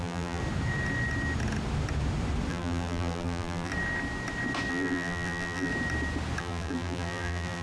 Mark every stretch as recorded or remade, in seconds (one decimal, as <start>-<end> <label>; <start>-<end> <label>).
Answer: 0.0-0.4 remade; 0.4-2.5 recorded; 2.5-3.7 remade; 3.7-4.7 recorded; 4.7-5.7 remade; 5.7-6.4 recorded; 6.4-7.6 remade